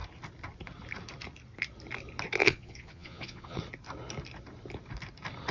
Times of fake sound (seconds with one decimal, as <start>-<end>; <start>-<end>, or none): 2.4-3.6